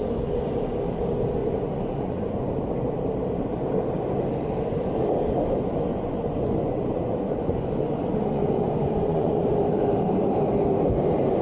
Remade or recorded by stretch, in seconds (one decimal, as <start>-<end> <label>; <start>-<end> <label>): 0.0-1.4 recorded; 1.4-2.5 remade; 2.5-5.9 recorded; 5.9-9.5 remade; 9.5-11.4 recorded